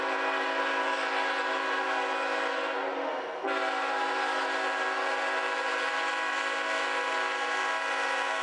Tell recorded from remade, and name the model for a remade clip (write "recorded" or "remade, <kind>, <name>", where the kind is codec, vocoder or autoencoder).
recorded